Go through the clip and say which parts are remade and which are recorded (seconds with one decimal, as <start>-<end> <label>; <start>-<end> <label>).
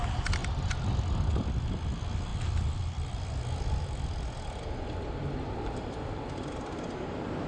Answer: 0.0-7.5 recorded